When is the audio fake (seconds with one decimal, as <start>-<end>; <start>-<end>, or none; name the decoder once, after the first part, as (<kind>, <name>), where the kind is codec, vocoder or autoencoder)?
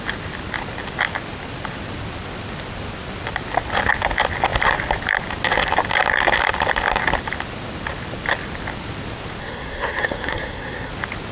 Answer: 9.4-10.9 (codec, SNAC)